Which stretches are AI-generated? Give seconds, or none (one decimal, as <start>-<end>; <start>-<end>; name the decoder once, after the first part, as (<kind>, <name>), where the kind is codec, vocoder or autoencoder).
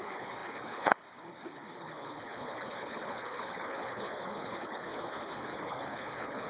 0.0-6.5 (codec, HILCodec)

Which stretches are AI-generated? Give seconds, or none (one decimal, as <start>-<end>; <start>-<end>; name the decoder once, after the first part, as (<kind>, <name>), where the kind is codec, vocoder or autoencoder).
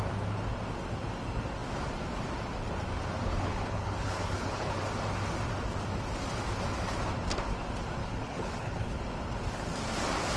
3.2-4.8 (codec, HILCodec); 8.0-9.0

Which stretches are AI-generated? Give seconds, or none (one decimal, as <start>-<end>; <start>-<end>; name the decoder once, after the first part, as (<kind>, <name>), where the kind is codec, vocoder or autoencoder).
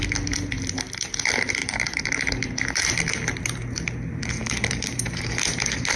1.6-2.1 (vocoder, BigVGAN v2); 4.2-5.3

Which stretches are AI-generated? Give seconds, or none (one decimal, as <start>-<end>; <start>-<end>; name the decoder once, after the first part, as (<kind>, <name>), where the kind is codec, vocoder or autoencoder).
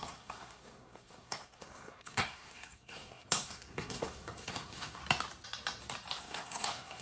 0.0-5.0 (codec, SNAC); 6.2-7.0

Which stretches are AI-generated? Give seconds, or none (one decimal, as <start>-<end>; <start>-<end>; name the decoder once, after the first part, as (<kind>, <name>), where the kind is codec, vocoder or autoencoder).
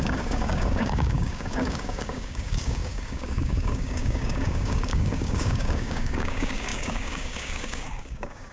0.0-8.5 (codec, DAC)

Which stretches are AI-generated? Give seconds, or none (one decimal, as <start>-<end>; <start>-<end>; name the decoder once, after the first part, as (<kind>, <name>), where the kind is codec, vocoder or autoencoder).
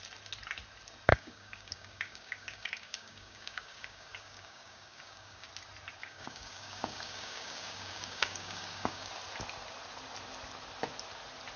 1.1-5.5 (codec, DAC); 6.0-9.1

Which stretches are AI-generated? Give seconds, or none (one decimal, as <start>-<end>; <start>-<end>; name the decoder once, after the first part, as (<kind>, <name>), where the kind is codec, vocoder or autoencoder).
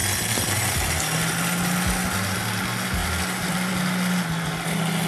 none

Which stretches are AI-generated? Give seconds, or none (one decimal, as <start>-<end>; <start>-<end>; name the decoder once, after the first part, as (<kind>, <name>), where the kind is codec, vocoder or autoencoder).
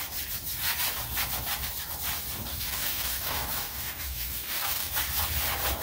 2.5-4.9 (codec, DAC)